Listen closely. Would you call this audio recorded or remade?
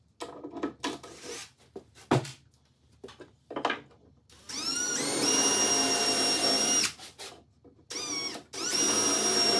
recorded